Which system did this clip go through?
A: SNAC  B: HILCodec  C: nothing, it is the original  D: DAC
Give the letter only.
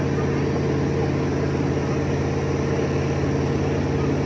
C